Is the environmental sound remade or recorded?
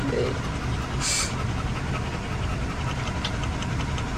recorded